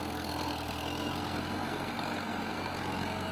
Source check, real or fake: fake